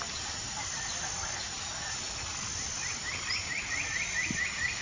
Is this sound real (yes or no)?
yes